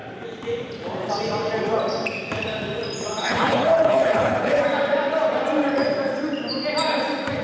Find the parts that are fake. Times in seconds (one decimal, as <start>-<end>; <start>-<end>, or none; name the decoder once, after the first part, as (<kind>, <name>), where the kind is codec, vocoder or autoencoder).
3.2-4.6 (codec, HILCodec)